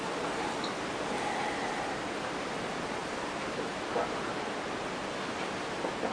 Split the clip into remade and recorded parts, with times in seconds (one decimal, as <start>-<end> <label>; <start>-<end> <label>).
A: 0.0-6.1 recorded